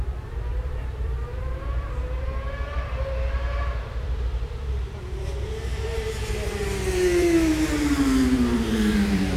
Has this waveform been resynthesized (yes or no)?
yes